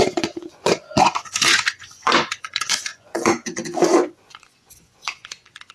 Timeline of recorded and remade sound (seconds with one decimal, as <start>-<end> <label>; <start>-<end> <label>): 0.0-5.7 remade